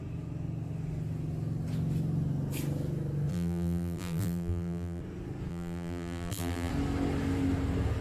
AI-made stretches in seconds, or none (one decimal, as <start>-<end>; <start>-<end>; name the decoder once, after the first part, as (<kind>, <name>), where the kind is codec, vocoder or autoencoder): 3.3-5.0 (vocoder, BigVGAN v2); 5.5-6.7